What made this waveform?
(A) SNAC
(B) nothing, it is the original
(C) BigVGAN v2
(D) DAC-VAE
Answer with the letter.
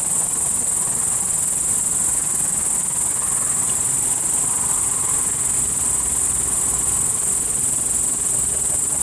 B